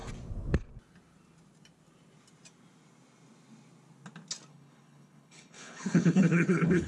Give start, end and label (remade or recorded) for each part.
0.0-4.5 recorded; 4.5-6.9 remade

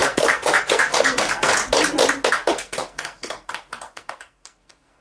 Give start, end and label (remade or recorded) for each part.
0.0-1.6 remade; 1.6-2.3 recorded; 2.3-5.0 remade

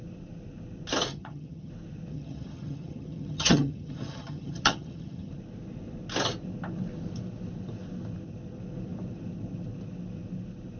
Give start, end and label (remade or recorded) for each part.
0.0-1.1 recorded; 1.1-1.7 remade; 1.7-2.1 recorded; 2.1-5.3 remade; 5.3-10.8 recorded

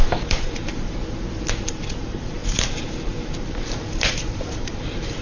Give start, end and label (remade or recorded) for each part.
0.0-1.0 remade; 1.0-1.7 recorded; 1.7-5.2 remade

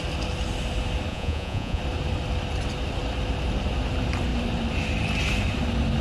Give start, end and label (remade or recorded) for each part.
0.0-1.1 recorded; 1.1-1.8 remade; 1.8-6.0 recorded

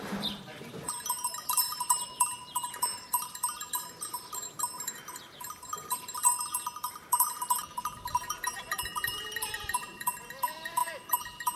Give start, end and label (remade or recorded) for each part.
0.0-11.6 remade

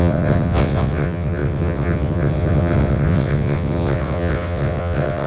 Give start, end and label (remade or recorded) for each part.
0.0-5.3 remade